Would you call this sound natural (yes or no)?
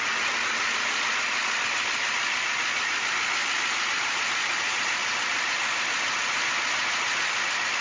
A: yes